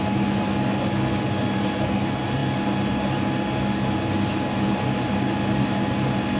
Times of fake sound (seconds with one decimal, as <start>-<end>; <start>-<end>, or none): none